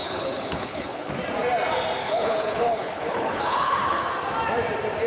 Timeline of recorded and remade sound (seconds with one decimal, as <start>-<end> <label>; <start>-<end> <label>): 0.0-1.1 remade; 1.1-2.0 recorded; 2.0-4.1 remade; 4.1-5.1 recorded